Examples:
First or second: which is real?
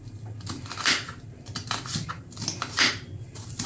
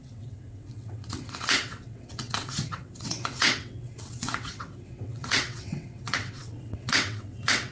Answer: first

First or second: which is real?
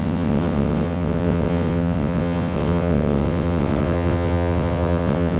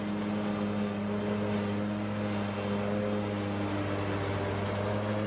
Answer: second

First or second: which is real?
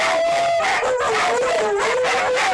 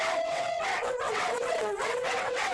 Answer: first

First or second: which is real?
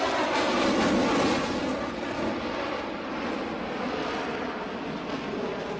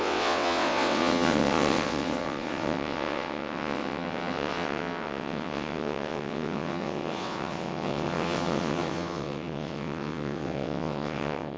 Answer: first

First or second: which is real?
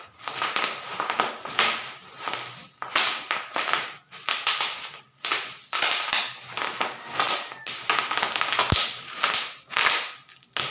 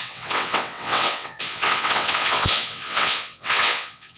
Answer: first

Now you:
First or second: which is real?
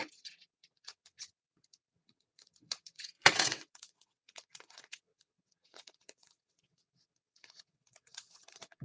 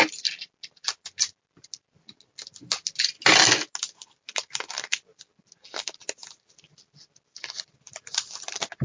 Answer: second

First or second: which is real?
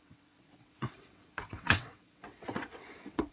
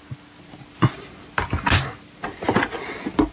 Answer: second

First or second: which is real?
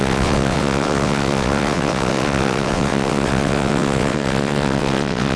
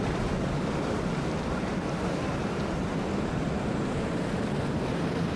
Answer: second